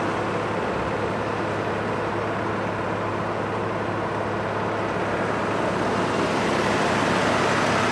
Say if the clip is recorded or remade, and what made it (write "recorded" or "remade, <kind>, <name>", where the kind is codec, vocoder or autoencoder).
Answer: recorded